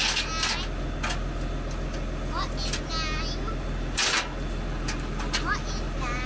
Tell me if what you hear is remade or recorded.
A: recorded